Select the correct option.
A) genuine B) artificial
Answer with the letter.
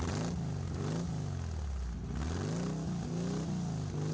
A